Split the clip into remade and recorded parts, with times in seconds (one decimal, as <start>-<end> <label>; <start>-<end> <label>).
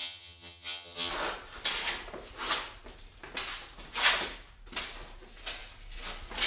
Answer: 0.0-1.1 remade; 1.1-6.5 recorded